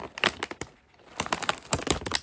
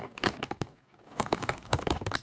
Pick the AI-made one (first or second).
second